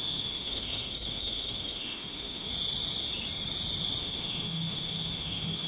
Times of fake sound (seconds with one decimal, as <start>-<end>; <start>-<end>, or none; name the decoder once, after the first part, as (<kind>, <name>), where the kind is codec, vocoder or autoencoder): 0.0-2.5 (autoencoder, DAC-VAE); 4.0-5.7